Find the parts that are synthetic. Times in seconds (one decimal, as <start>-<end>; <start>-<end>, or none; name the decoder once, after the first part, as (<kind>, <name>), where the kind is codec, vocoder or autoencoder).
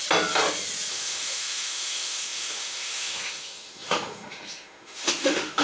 0.9-5.6 (autoencoder, DAC-VAE)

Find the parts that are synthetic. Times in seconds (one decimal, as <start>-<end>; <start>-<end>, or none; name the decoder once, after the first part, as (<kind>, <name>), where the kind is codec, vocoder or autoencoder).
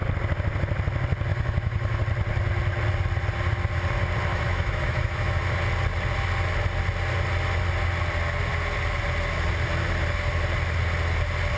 1.3-2.0 (autoencoder, DAC-VAE); 4.3-5.4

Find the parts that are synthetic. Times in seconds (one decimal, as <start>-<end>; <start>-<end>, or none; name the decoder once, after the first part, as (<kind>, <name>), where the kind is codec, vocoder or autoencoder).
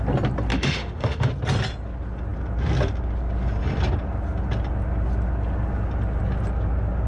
0.5-1.3 (autoencoder, DAC-VAE)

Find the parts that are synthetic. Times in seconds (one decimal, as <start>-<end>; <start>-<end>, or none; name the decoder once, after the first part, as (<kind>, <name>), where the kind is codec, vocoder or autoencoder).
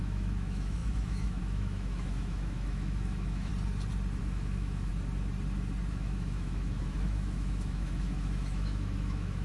0.0-3.5 (autoencoder, DAC-VAE); 4.2-4.9; 5.9-9.4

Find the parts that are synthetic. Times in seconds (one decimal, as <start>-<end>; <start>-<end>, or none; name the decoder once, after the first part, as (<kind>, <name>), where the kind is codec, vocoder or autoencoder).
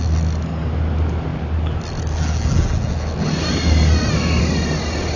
none